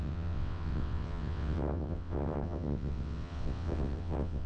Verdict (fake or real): fake